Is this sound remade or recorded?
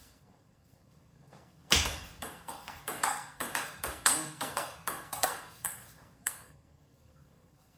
remade